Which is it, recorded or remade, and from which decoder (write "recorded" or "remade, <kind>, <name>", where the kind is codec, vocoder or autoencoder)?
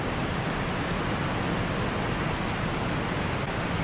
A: recorded